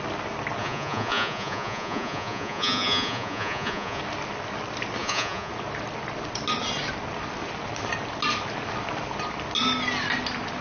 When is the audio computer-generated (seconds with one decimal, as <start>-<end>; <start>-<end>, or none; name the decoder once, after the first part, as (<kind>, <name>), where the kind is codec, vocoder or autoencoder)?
0.6-4.0 (vocoder, Vocos); 5.0-5.5

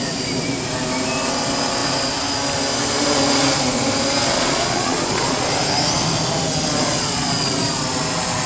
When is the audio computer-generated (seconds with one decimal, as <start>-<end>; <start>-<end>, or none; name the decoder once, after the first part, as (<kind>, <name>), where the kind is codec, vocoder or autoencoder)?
4.3-5.5 (vocoder, Vocos)

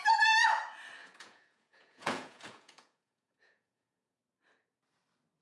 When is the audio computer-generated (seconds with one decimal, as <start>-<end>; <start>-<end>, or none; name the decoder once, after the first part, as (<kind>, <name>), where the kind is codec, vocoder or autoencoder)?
1.0-4.2 (vocoder, Vocos)

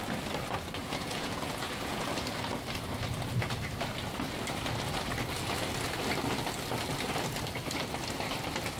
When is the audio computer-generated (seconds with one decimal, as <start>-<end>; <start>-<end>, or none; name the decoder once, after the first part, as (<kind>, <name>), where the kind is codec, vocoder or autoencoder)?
0.8-2.1 (vocoder, Vocos)

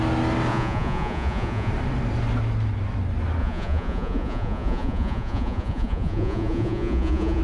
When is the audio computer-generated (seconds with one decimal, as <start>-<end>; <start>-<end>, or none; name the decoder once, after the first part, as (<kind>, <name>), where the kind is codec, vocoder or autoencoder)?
0.5-1.7 (vocoder, Vocos); 3.4-7.4

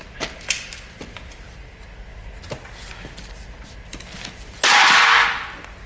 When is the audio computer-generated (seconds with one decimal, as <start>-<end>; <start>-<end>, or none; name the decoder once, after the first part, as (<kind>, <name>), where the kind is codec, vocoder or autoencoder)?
none

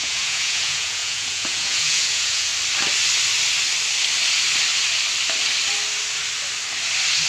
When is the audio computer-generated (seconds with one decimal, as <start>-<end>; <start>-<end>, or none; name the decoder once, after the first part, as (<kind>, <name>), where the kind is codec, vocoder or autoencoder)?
0.0-2.5 (vocoder, Vocos)

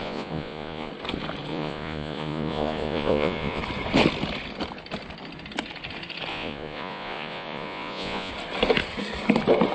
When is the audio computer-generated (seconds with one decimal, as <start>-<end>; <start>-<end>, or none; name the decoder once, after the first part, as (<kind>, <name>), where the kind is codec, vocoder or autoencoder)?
0.0-0.9 (vocoder, Vocos); 1.5-3.6; 6.3-8.3